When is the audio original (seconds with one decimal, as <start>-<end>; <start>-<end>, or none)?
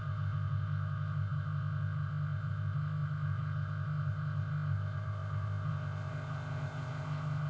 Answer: none